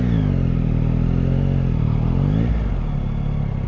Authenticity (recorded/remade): recorded